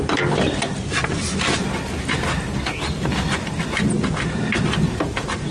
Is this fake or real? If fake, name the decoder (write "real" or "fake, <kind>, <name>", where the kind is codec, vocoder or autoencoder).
real